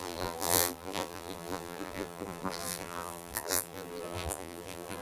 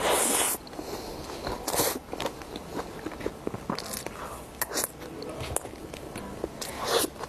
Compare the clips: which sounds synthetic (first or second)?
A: first